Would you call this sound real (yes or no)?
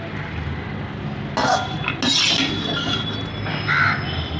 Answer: yes